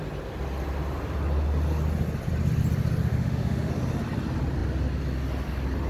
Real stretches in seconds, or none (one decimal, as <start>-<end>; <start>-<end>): 0.0-3.1; 3.7-5.9